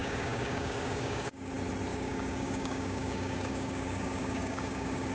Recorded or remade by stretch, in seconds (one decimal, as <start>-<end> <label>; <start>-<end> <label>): 0.0-1.5 remade; 1.5-1.9 recorded; 1.9-5.1 remade